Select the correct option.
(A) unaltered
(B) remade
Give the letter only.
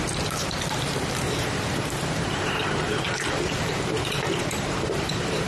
B